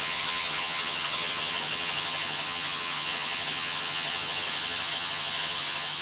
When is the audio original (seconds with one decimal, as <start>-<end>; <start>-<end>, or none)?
none